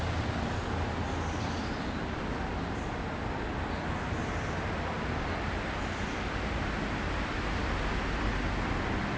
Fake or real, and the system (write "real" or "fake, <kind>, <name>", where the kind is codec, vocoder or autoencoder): real